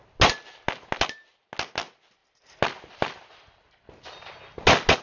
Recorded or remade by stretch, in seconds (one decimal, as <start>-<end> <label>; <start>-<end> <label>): 0.0-5.0 recorded